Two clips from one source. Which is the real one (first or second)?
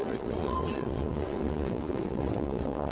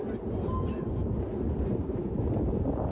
second